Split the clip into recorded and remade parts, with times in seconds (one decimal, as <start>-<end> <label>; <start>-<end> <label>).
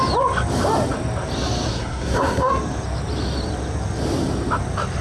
0.0-1.7 recorded; 1.7-2.5 remade; 2.5-5.0 recorded